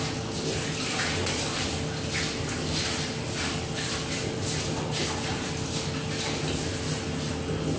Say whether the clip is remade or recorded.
recorded